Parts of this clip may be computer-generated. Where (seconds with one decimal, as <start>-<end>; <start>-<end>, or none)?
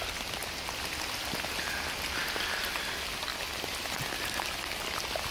0.4-1.6